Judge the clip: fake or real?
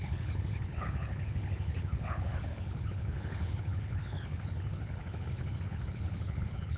fake